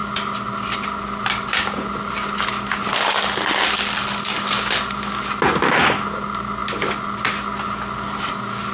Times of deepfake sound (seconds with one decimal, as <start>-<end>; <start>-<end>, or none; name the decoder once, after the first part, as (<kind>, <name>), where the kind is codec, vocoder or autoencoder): none